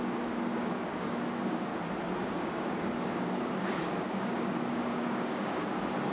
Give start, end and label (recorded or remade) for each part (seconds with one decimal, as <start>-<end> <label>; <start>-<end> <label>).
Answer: 0.0-1.7 remade; 1.7-2.4 recorded; 2.4-6.1 remade